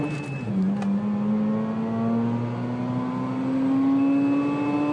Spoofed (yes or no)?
no